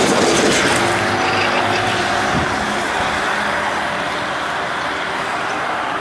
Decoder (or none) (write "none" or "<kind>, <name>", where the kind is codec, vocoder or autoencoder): none